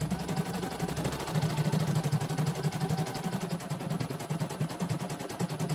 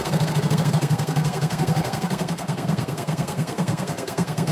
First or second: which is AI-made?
second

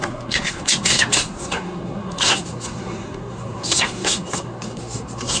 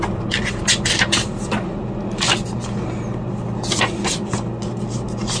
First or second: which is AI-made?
first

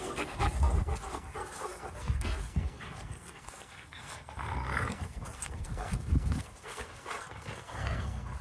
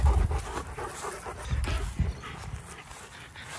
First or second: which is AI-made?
first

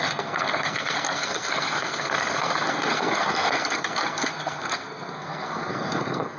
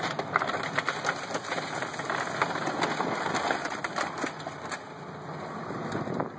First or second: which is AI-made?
first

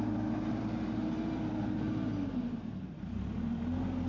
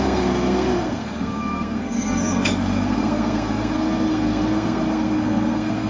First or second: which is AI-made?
second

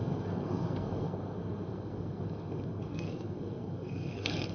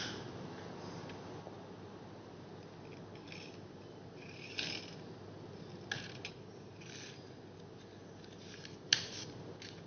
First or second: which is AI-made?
first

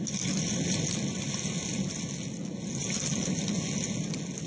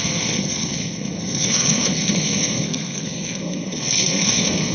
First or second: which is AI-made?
second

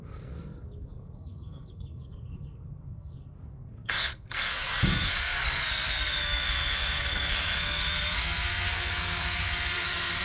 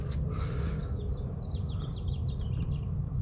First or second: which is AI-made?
first